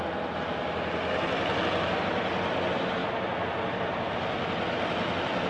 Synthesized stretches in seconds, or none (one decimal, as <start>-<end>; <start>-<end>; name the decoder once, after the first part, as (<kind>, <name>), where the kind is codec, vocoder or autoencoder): none